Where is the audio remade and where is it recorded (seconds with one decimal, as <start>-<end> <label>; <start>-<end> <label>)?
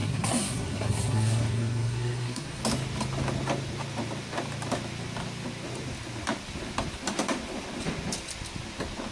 0.0-2.6 remade; 2.6-9.1 recorded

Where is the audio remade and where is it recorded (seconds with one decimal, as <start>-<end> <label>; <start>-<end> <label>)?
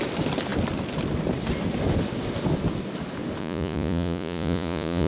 0.0-3.4 recorded; 3.4-5.1 remade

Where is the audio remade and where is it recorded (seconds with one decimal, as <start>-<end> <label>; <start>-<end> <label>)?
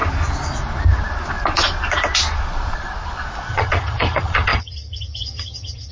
0.0-3.5 recorded; 3.5-5.9 remade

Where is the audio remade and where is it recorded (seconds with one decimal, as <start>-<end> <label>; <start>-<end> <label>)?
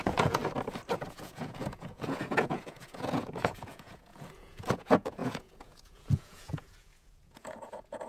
0.0-0.4 remade; 0.4-1.1 recorded; 1.1-8.1 remade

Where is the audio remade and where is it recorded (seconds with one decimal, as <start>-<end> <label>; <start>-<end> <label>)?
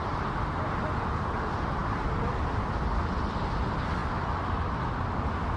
0.0-5.6 recorded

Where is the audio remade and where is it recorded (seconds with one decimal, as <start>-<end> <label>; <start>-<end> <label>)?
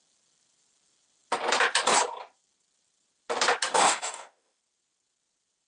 0.0-3.7 recorded; 3.7-4.6 remade; 4.6-5.7 recorded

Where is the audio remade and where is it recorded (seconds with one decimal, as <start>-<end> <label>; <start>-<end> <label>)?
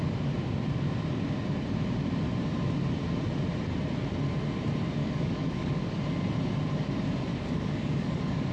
0.0-5.0 recorded; 5.0-6.0 remade; 6.0-7.3 recorded; 7.3-8.5 remade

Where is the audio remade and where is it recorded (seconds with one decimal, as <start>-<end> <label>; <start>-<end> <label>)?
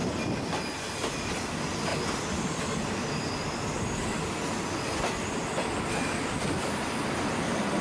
0.0-7.8 recorded